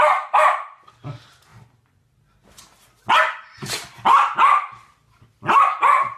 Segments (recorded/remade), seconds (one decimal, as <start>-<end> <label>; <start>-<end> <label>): 0.0-6.2 recorded